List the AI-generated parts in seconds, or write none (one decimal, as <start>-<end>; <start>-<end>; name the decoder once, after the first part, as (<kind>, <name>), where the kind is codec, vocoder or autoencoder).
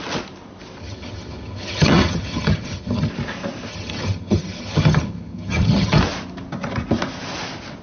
0.8-3.1 (vocoder, HiFi-GAN); 3.7-6.0